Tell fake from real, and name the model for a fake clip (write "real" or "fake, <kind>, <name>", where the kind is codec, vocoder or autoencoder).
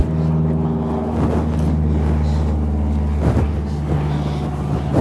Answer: real